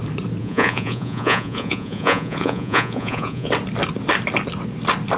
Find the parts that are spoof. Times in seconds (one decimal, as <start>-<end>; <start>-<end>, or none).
0.4-3.5